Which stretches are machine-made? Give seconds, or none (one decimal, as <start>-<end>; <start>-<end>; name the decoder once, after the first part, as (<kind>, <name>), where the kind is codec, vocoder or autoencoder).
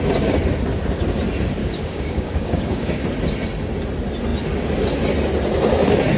1.6-3.0 (codec, DAC)